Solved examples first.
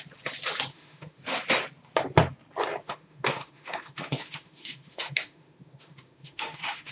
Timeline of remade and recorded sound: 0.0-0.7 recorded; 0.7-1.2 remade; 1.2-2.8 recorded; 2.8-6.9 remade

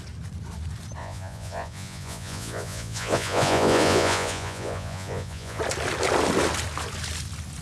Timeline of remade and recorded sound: 0.0-1.0 recorded; 1.0-5.6 remade; 5.6-7.6 recorded

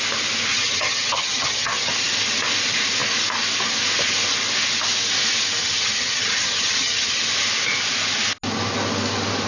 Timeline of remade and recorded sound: 0.0-0.5 recorded; 0.5-1.9 remade; 1.9-5.6 recorded; 5.6-7.2 remade; 7.2-9.5 recorded

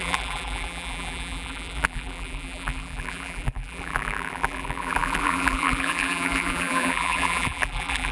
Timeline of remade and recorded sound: 0.0-8.1 remade

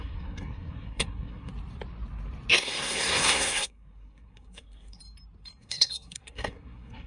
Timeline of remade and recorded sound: 0.0-1.5 remade; 1.5-2.5 recorded; 2.5-5.0 remade; 5.0-5.6 recorded; 5.6-7.1 remade